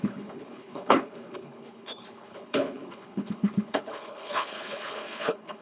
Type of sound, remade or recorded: remade